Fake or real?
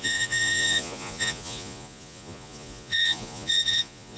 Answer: fake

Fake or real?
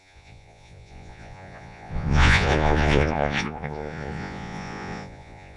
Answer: fake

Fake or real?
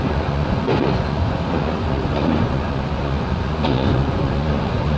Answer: fake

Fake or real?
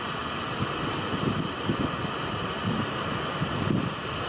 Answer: real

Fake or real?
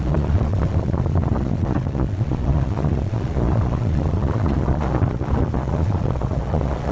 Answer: fake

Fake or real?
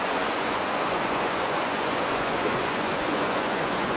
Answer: fake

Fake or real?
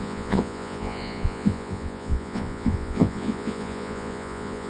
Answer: fake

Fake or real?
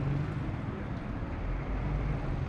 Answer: real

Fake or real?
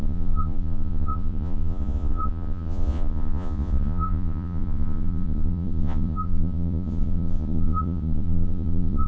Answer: fake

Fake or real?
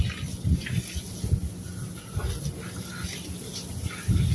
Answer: real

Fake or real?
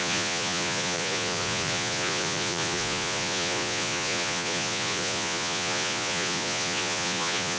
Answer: fake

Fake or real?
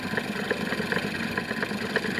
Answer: real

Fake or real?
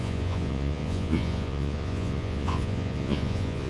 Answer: fake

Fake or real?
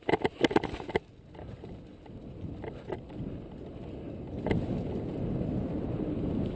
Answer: real